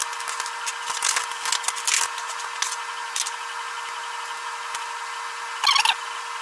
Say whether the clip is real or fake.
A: real